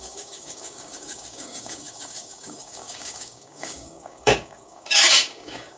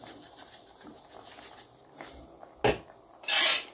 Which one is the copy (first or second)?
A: first